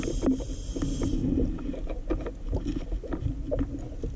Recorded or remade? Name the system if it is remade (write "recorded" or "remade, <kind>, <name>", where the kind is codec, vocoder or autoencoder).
recorded